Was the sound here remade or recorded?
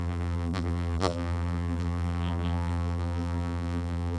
remade